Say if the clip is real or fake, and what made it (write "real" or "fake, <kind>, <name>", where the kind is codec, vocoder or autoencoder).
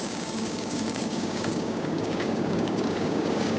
fake, codec, DAC